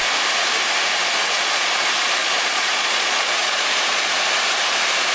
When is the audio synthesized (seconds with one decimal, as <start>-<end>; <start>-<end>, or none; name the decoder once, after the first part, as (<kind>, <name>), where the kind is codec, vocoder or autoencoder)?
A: 1.2-1.8 (vocoder, Vocos); 2.2-4.1